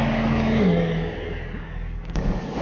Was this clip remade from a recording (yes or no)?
yes